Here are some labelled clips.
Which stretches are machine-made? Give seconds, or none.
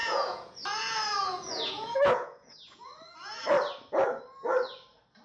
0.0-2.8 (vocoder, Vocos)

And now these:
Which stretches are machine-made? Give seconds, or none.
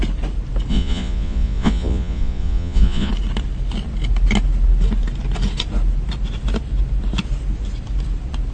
0.7-3.1 (vocoder, Vocos)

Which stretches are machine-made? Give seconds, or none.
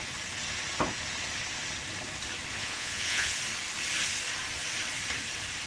2.6-3.4 (vocoder, Vocos)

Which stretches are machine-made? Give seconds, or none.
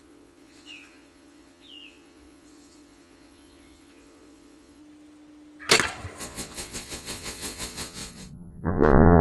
0.0-4.8 (vocoder, Vocos); 6.2-9.2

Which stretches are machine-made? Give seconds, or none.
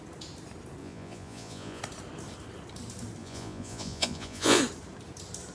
0.8-1.8 (vocoder, Vocos); 3.2-4.6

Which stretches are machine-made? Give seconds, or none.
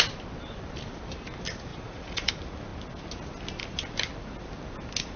1.7-2.3 (vocoder, Vocos)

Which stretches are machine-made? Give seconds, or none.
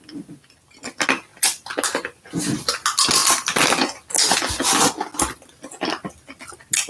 none